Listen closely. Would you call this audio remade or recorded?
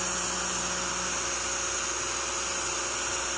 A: recorded